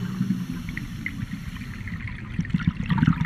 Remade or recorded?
recorded